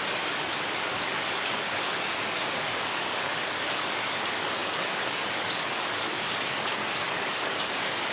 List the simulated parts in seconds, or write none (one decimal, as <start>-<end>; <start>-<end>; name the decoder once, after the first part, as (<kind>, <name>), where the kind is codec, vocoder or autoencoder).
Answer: 0.0-8.1 (codec, DAC)